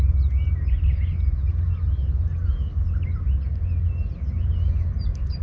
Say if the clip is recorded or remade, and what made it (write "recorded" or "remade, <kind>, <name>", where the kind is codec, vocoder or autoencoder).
recorded